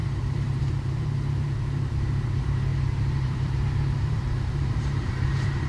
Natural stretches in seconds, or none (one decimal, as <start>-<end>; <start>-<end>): none